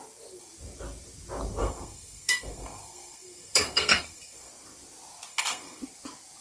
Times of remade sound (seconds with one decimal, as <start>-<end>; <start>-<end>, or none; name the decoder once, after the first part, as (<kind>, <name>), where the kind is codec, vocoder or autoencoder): 1.6-4.5 (codec, SNAC); 5.3-5.8